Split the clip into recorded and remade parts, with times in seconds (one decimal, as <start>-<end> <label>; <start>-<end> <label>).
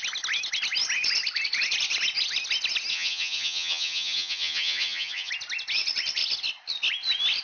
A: 0.0-2.9 recorded; 2.9-5.3 remade; 5.3-7.4 recorded